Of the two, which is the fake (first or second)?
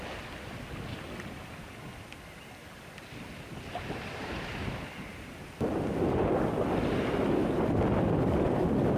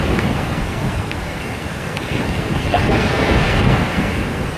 second